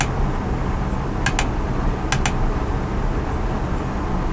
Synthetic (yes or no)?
no